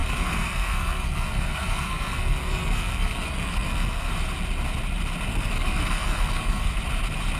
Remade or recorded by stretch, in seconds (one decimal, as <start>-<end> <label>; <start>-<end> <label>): 0.0-4.1 remade; 4.1-5.3 recorded; 5.3-6.7 remade; 6.7-7.4 recorded